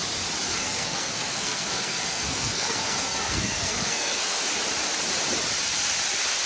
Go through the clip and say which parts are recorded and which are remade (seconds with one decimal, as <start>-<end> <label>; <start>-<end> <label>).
0.0-0.5 recorded; 0.5-4.4 remade; 4.4-6.5 recorded